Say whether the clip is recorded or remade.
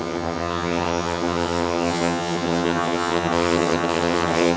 remade